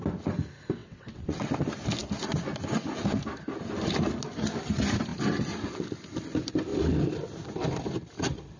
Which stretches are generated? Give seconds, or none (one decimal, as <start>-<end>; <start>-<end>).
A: 0.8-1.5